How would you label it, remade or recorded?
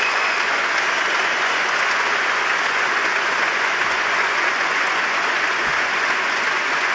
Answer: remade